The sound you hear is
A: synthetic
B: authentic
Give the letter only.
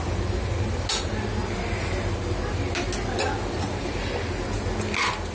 B